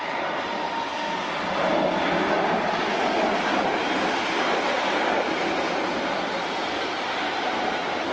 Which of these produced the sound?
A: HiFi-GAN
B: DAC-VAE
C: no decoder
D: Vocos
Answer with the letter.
C